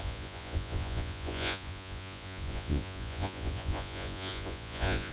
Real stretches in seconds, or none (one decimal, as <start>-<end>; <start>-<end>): none